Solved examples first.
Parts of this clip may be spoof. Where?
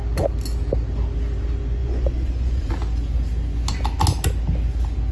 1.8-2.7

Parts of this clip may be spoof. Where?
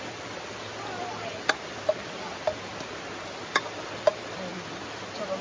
0.0-2.7; 3.4-4.5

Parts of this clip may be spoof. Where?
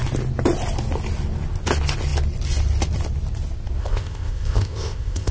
3.8-5.3